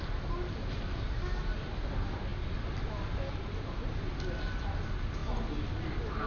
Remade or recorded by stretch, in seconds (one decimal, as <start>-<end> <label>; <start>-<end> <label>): 0.0-6.3 recorded